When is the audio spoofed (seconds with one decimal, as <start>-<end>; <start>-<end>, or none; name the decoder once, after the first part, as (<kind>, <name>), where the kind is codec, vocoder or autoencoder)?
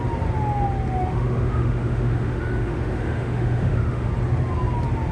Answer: 1.0-4.1 (autoencoder, DAC-VAE)